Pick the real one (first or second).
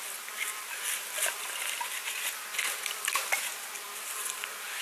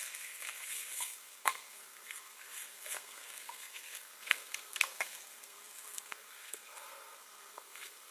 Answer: first